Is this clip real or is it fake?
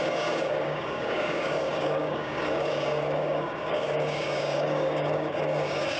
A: fake